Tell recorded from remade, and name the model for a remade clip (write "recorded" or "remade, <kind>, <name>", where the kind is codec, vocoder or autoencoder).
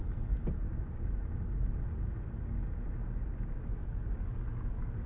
recorded